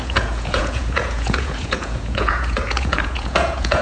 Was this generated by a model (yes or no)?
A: yes